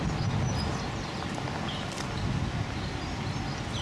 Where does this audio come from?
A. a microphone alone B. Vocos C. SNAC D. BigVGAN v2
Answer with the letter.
A